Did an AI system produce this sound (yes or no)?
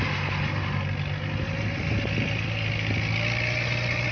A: no